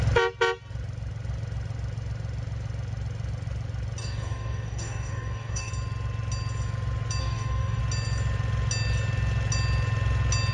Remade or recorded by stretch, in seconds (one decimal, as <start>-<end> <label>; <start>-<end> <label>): 0.0-4.0 recorded; 4.0-5.7 remade; 5.7-7.2 recorded; 7.2-7.8 remade; 7.8-10.5 recorded